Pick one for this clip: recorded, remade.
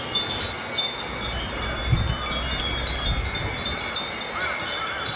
recorded